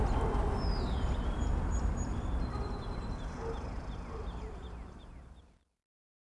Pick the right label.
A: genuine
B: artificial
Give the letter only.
B